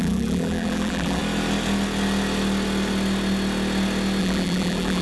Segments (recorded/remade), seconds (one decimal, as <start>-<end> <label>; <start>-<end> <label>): 0.0-1.2 remade; 1.2-4.2 recorded; 4.2-5.0 remade